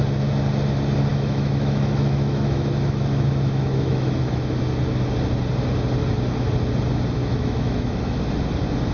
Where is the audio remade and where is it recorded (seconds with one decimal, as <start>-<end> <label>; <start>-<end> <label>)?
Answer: 0.0-1.1 recorded; 1.1-4.6 remade; 4.6-7.2 recorded; 7.2-8.1 remade; 8.1-8.9 recorded